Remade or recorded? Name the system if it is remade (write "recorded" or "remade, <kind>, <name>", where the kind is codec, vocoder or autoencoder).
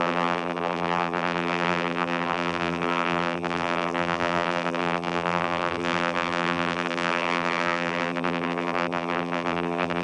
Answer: remade, vocoder, BigVGAN v2